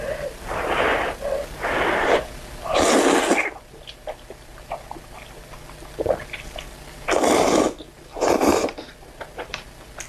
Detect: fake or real fake